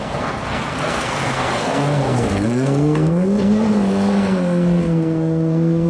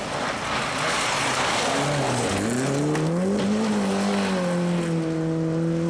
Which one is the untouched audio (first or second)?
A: second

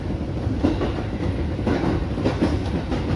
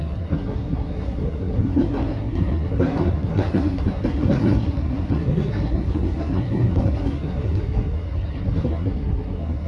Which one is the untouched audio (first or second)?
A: first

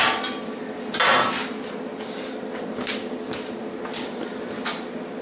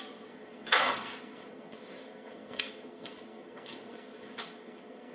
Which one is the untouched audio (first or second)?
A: first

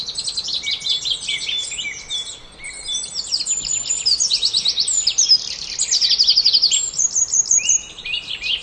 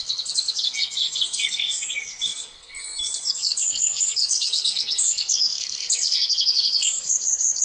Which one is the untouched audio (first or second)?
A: first